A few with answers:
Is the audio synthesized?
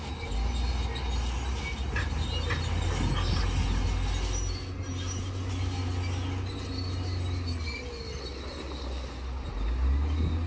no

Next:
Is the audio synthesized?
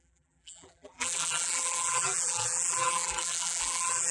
yes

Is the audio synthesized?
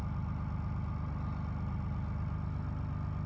no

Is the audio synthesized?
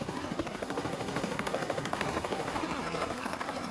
yes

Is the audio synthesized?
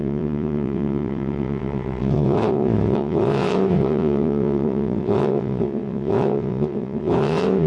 yes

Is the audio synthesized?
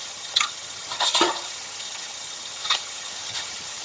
yes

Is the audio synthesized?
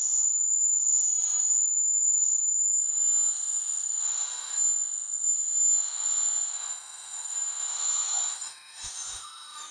yes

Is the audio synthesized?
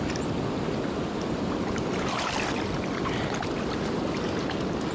no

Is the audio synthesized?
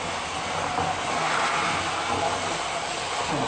no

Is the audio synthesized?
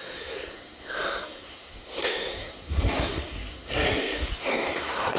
yes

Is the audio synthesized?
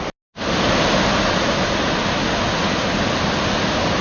no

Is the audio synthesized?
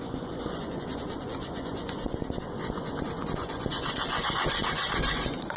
yes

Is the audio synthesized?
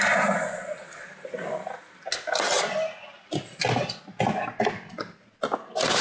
no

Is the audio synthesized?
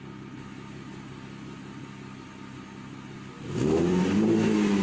no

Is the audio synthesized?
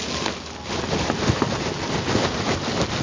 no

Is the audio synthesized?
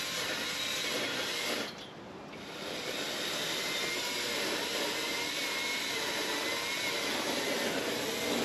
no